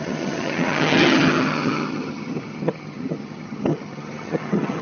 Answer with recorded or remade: remade